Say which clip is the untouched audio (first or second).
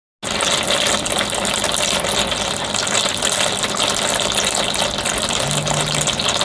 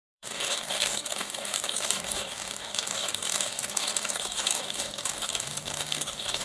first